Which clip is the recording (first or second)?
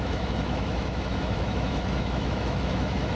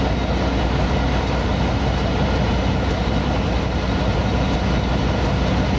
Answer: second